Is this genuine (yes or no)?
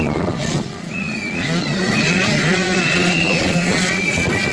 no